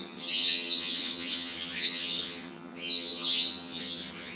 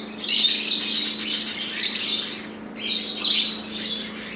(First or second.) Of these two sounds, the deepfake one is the first